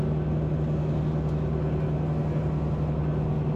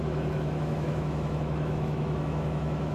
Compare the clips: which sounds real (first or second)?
first